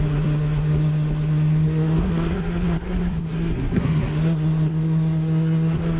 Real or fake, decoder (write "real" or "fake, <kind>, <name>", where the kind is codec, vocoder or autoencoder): fake, codec, SNAC